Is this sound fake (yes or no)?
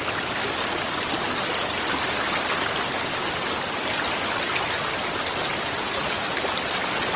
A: no